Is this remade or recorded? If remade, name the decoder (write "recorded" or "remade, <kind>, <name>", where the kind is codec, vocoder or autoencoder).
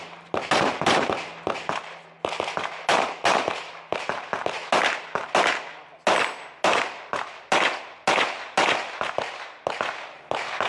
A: recorded